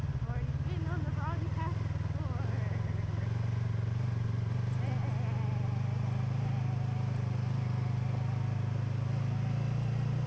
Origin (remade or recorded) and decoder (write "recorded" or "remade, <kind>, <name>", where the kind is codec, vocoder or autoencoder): recorded